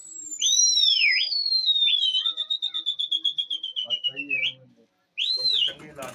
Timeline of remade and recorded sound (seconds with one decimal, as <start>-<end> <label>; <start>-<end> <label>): 0.0-6.1 recorded